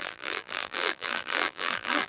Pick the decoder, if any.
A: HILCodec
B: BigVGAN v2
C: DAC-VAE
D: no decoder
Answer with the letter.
B